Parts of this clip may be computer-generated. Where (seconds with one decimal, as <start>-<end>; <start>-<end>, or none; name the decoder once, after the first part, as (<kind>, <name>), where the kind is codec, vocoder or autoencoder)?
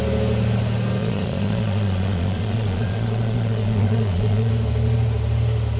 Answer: 1.0-4.5 (vocoder, Vocos)